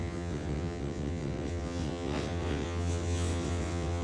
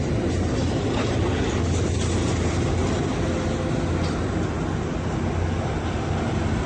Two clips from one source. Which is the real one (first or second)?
second